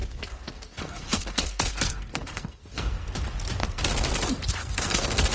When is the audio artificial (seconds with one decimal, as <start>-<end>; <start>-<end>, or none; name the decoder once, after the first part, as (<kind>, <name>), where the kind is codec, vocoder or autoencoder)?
0.0-3.2 (codec, SNAC); 3.6-4.1; 4.6-5.3